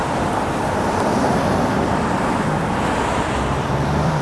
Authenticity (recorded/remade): remade